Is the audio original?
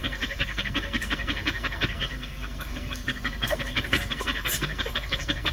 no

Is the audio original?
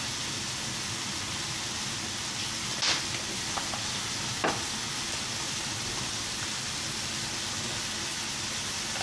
yes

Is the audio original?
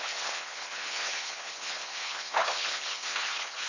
no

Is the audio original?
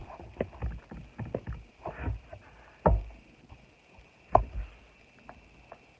yes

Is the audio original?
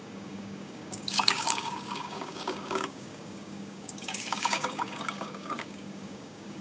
no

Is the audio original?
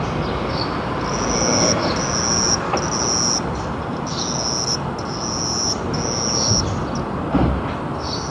yes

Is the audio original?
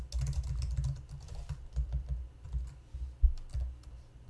yes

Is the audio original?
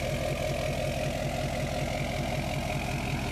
yes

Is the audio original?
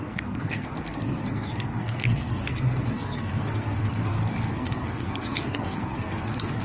no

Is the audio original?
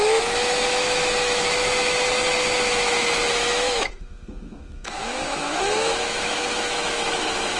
no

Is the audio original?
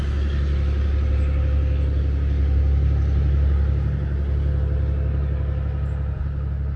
yes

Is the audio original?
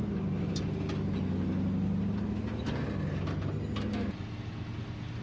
yes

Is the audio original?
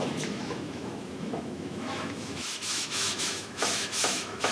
no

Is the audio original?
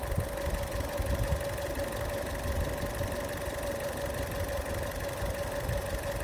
yes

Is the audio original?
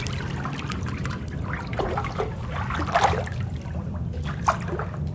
yes